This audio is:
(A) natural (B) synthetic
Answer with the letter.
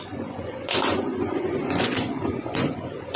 B